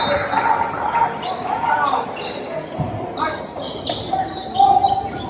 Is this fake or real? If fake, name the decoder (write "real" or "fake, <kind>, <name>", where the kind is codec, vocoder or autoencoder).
real